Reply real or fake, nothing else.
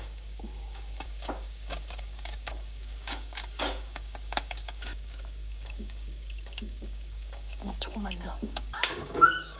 fake